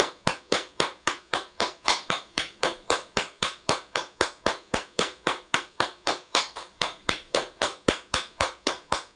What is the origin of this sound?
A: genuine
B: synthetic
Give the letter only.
B